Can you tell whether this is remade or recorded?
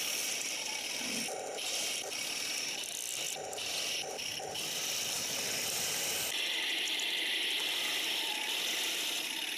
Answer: recorded